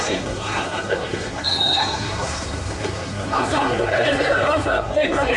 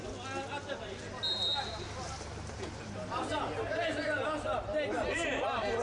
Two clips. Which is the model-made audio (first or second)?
first